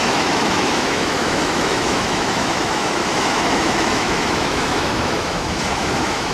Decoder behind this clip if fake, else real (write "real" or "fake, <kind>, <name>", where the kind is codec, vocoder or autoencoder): fake, autoencoder, DAC-VAE